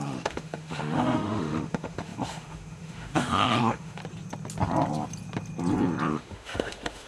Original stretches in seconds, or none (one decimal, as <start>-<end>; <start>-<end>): 4.0-6.1